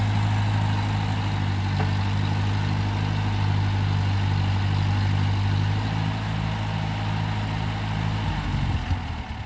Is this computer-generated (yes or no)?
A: no